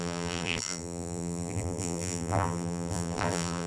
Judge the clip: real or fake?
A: fake